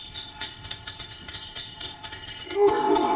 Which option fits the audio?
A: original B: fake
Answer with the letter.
B